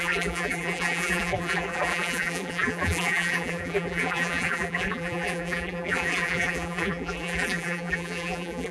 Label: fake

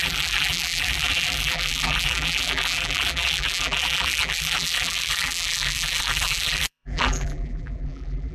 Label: fake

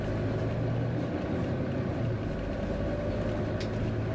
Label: real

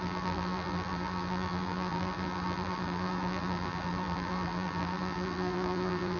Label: fake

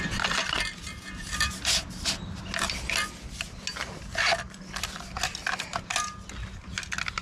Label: real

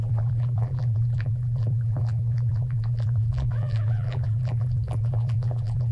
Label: fake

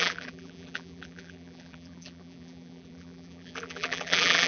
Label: fake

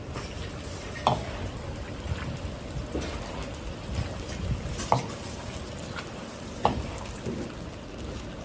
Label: real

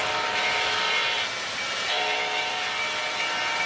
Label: real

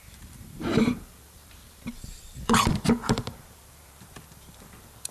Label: fake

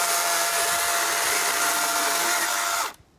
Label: real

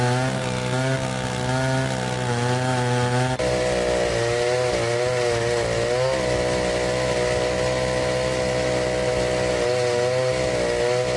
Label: real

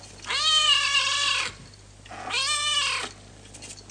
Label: real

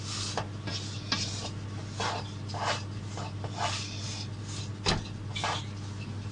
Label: real